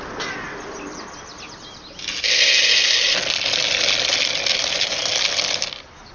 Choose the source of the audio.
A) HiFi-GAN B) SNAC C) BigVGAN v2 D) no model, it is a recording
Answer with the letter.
D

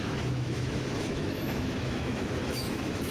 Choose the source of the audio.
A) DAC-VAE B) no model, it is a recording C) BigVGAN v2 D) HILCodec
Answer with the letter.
A